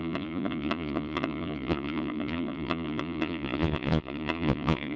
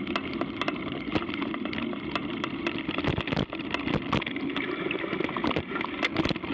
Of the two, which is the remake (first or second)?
first